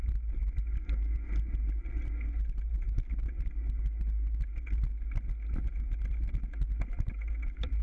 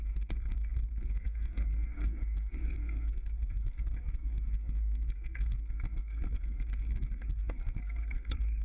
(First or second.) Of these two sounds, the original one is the first